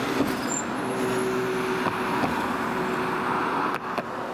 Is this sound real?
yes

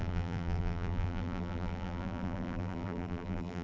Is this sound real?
no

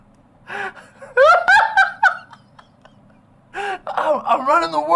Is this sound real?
no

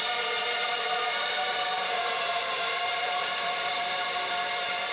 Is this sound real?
no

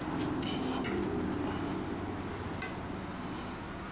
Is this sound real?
yes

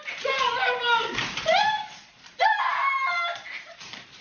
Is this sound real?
no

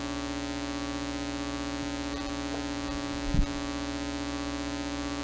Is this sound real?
yes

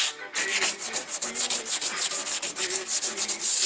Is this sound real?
yes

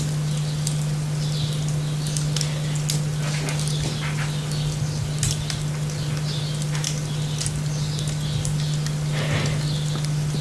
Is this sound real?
yes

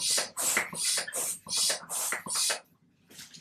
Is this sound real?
yes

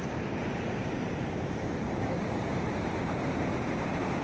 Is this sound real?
no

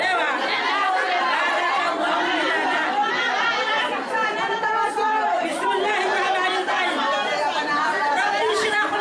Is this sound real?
yes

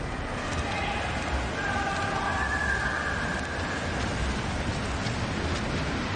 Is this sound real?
yes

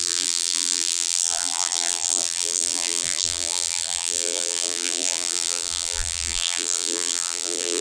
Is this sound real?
no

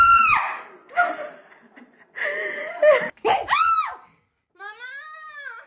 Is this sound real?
yes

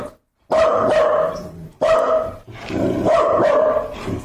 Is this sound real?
no